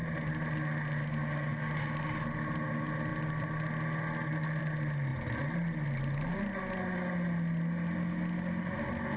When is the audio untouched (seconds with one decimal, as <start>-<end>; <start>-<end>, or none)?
0.0-9.2